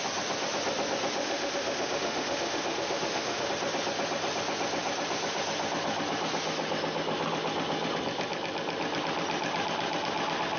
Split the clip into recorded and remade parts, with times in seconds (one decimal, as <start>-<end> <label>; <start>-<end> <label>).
0.0-1.2 recorded; 1.2-3.5 remade; 3.5-10.6 recorded